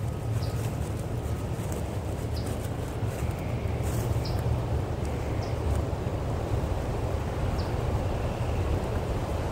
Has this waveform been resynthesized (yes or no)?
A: yes